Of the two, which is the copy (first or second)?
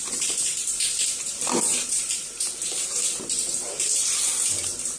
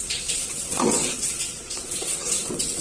second